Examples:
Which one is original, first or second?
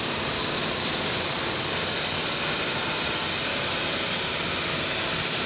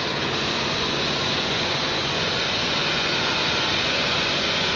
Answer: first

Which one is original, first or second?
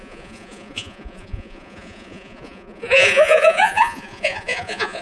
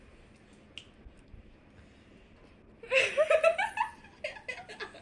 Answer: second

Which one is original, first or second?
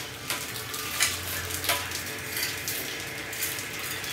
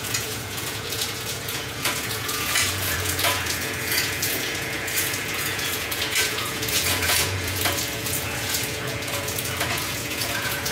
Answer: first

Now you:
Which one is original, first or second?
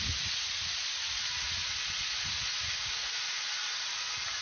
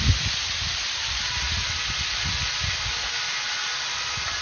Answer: second